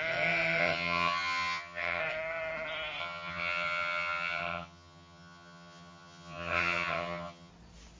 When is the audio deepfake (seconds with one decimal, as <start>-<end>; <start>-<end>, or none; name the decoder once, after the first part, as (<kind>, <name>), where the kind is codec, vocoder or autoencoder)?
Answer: 0.6-2.0 (vocoder, HiFi-GAN); 3.0-7.5